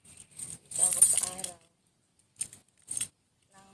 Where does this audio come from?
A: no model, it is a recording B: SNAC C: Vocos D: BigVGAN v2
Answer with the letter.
A